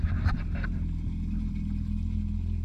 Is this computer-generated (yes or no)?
no